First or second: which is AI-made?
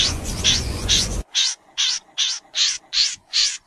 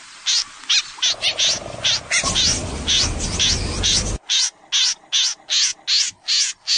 first